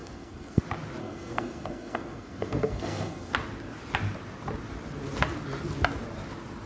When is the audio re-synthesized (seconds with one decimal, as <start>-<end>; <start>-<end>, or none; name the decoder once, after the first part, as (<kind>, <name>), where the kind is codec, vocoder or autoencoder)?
0.0-0.6 (codec, SNAC); 1.0-3.3